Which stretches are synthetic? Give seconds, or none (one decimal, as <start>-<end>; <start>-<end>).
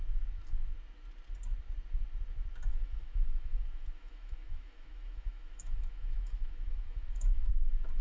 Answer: 2.7-7.5